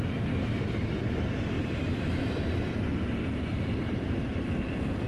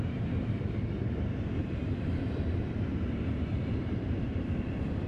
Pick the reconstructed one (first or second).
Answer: second